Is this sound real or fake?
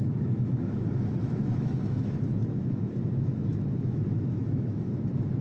fake